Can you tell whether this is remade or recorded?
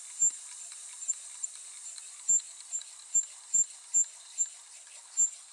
recorded